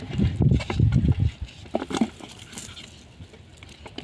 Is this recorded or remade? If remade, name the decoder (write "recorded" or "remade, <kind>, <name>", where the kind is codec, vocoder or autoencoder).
recorded